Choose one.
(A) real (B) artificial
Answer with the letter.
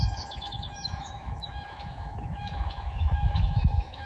B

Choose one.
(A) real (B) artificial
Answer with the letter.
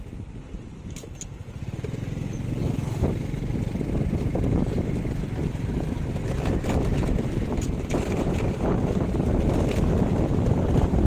A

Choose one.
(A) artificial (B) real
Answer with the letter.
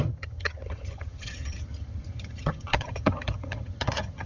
A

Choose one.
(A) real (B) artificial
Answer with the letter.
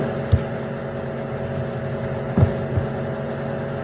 A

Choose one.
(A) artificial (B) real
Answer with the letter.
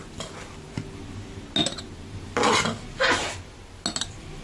B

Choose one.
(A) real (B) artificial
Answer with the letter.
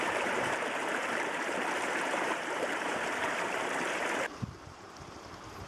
B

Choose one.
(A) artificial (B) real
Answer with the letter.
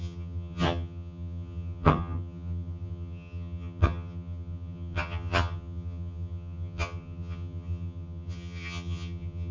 A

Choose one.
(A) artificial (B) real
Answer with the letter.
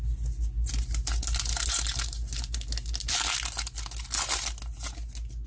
B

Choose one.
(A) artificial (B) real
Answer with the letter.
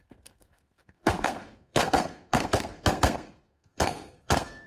A